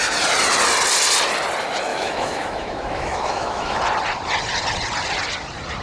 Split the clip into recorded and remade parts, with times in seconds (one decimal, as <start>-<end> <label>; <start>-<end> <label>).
0.0-1.9 recorded; 1.9-3.8 remade; 3.8-5.8 recorded